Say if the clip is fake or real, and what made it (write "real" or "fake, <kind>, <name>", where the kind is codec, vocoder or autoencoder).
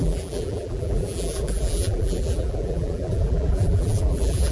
fake, vocoder, BigVGAN v2